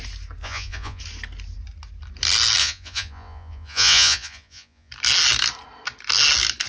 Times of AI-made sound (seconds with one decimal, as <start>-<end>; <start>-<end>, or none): 0.4-1.0; 2.6-4.9